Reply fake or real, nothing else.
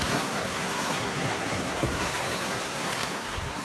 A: fake